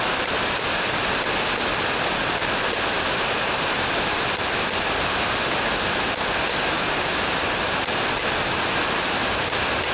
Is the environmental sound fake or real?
real